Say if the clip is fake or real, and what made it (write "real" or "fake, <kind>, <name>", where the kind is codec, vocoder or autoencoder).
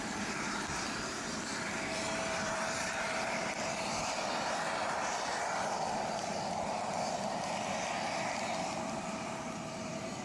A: fake, vocoder, BigVGAN v2